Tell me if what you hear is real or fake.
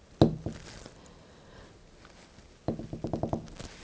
real